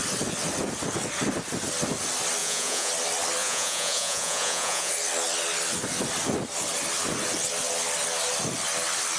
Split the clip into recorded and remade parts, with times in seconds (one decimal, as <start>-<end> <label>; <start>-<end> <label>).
0.0-2.4 recorded; 2.4-2.9 remade; 2.9-3.4 recorded; 3.4-4.9 remade; 4.9-9.2 recorded